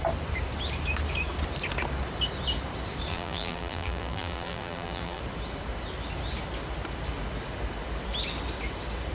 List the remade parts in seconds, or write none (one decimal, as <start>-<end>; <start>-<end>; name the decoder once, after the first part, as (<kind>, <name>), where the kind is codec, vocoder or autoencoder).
3.1-5.2 (vocoder, BigVGAN v2)